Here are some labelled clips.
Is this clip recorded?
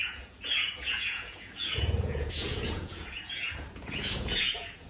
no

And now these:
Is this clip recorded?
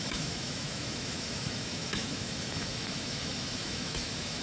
no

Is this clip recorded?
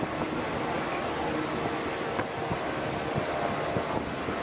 yes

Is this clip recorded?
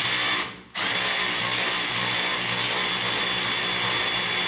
yes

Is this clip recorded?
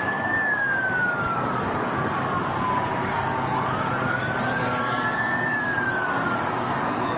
no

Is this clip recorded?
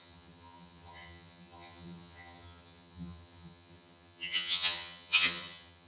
no